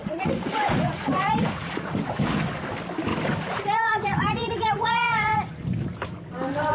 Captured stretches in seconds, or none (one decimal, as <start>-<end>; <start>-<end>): 2.0-3.1; 5.4-6.7